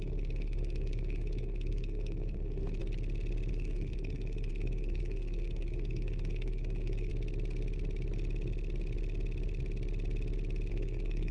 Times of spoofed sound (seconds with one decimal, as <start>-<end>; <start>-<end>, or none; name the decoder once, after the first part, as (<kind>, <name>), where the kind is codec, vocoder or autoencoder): 0.0-2.8 (codec, SNAC); 3.5-7.1; 10.7-11.3